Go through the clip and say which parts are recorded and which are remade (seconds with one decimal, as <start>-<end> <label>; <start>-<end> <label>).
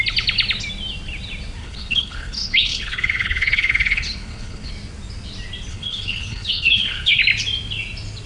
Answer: 0.0-1.6 recorded; 1.6-4.7 remade; 4.7-5.7 recorded; 5.7-7.2 remade; 7.2-8.3 recorded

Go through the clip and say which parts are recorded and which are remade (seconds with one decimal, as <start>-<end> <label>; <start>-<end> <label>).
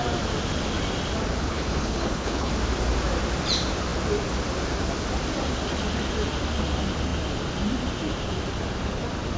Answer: 0.0-1.4 recorded; 1.4-2.5 remade; 2.5-9.4 recorded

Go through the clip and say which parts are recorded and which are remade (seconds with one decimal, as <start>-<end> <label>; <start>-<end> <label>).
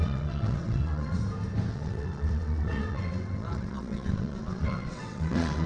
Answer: 0.0-1.2 remade; 1.2-1.7 recorded; 1.7-5.7 remade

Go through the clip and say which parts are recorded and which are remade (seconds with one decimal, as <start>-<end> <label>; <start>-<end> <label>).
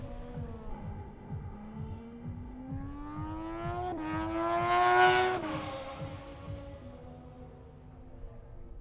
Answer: 0.0-0.7 recorded; 0.7-2.7 remade; 2.7-8.8 recorded